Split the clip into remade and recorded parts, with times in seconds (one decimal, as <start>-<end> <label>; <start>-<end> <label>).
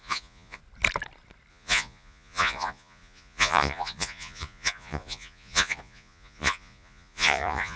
0.0-0.6 remade; 0.6-1.5 recorded; 1.5-7.8 remade